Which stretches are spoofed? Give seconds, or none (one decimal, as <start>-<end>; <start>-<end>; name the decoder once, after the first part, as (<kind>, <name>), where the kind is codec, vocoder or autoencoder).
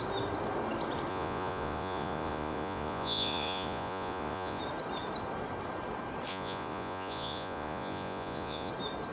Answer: 1.1-4.6 (vocoder, Vocos); 6.3-8.7